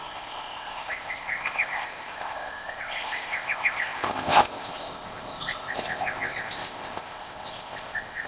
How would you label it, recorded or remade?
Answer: remade